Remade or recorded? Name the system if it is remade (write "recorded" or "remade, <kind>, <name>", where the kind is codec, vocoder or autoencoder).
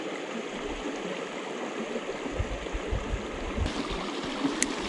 recorded